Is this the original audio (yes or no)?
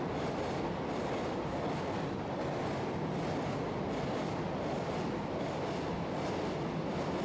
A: yes